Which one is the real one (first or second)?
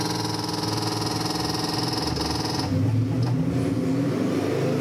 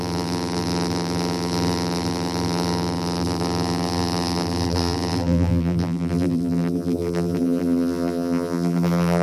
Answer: first